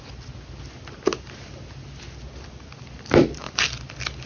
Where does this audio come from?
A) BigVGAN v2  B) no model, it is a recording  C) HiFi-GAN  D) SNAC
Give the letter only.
B